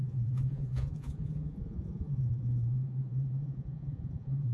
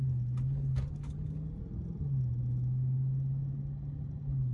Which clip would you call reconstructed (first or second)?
first